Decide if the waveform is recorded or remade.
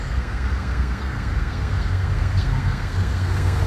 remade